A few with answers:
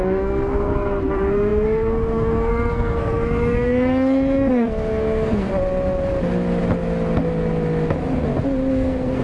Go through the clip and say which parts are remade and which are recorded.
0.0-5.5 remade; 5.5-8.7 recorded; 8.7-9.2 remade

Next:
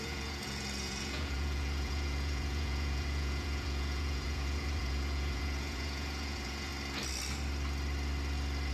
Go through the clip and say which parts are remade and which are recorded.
0.0-6.7 remade; 6.7-8.7 recorded

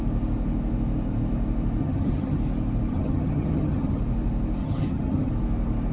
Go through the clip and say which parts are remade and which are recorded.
0.0-1.8 recorded; 1.8-2.4 remade; 2.4-2.9 recorded; 2.9-4.0 remade; 4.0-4.6 recorded; 4.6-5.3 remade; 5.3-5.9 recorded

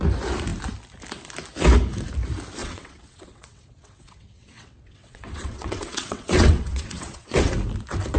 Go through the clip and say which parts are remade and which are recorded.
0.0-2.6 recorded; 2.6-7.5 remade; 7.5-8.2 recorded

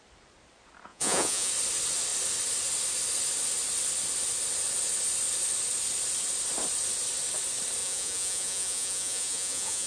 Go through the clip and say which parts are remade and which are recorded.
0.0-0.9 recorded; 0.9-1.5 remade; 1.5-7.8 recorded; 7.8-9.9 remade